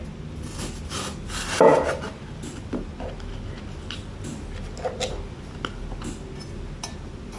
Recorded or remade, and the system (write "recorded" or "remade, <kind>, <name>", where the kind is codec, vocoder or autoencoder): recorded